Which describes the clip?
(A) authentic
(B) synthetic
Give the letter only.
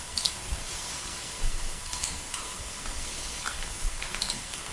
B